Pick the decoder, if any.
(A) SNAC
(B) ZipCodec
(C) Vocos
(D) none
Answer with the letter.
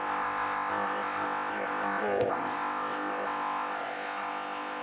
B